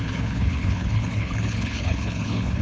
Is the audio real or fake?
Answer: fake